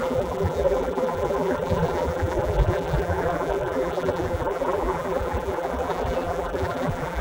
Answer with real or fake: fake